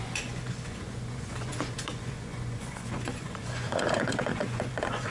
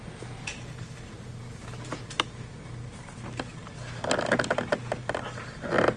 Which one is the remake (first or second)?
first